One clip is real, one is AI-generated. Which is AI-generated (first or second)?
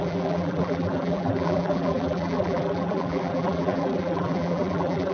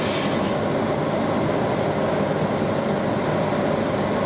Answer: first